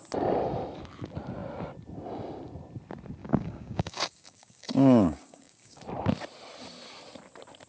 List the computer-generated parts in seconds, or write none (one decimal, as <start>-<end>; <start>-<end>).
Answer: 3.2-5.8